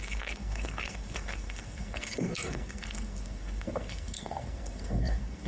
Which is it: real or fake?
fake